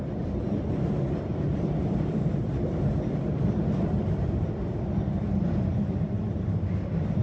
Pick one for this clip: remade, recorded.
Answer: remade